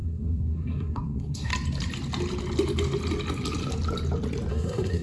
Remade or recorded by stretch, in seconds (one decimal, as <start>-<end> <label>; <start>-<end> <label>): 0.0-1.5 remade; 1.5-4.5 recorded; 4.5-5.0 remade